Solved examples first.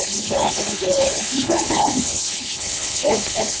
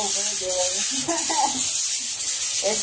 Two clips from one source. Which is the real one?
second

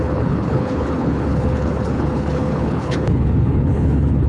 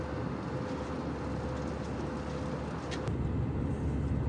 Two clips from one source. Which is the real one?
second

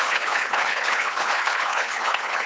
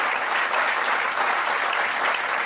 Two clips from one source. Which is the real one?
second